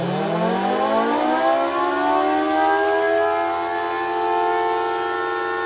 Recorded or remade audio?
recorded